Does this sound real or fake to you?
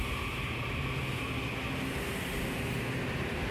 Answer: real